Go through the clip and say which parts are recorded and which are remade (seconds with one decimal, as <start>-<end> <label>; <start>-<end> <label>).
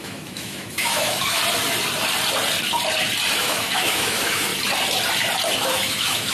0.0-1.4 remade; 1.4-3.4 recorded; 3.4-4.5 remade; 4.5-5.5 recorded; 5.5-6.3 remade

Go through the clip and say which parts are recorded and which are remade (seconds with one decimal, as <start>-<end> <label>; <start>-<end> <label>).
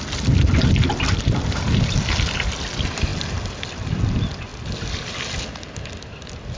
0.0-6.6 recorded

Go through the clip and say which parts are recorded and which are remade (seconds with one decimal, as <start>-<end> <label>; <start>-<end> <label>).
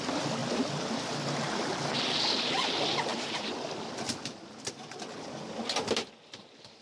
0.0-0.4 recorded; 0.4-1.7 remade; 1.7-3.1 recorded; 3.1-5.0 remade; 5.0-6.8 recorded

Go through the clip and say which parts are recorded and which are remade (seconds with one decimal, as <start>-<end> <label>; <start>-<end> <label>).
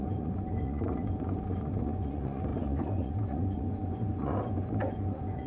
0.0-5.5 remade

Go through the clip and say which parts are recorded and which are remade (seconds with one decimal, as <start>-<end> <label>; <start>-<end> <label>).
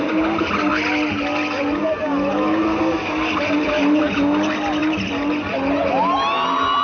0.0-6.8 recorded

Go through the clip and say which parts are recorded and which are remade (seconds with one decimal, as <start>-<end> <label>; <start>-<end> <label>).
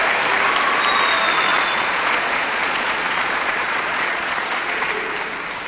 0.0-1.5 recorded; 1.5-4.9 remade; 4.9-5.7 recorded